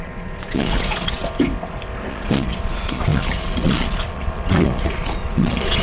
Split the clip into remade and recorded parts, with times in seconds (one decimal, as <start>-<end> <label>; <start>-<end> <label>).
0.0-1.2 remade; 1.2-2.1 recorded; 2.1-5.8 remade